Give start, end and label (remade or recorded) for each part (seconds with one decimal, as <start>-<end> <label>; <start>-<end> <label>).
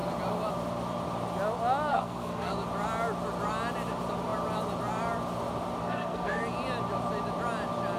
0.0-1.9 recorded; 1.9-2.5 remade; 2.5-5.8 recorded; 5.8-6.4 remade; 6.4-8.0 recorded